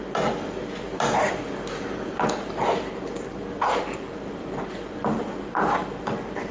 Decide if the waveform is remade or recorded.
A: recorded